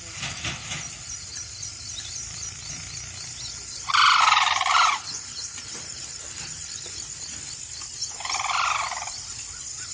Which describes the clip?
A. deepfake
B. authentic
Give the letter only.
B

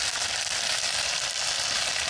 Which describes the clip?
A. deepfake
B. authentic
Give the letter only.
B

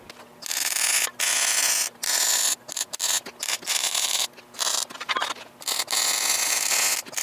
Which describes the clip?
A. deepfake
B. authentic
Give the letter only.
B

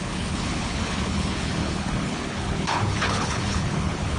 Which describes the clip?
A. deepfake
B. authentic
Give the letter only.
A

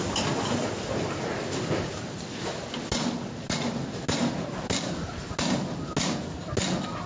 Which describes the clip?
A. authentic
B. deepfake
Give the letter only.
A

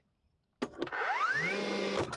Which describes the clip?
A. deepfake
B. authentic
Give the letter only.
B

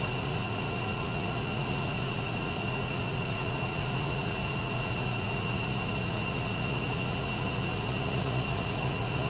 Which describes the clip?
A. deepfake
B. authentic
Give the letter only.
A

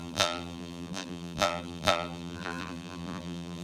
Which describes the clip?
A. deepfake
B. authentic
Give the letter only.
A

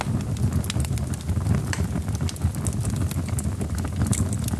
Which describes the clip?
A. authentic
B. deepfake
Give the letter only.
A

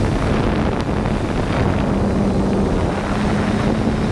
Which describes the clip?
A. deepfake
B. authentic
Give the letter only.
B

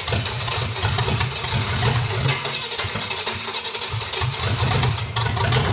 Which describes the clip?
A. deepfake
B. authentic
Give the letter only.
B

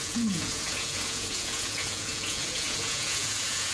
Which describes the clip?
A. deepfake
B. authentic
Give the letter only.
A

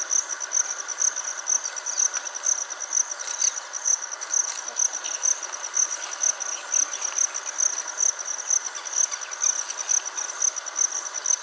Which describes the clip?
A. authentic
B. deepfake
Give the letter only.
A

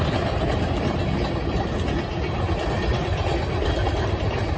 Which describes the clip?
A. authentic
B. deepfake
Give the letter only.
A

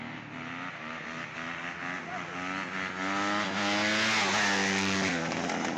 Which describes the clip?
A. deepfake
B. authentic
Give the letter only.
B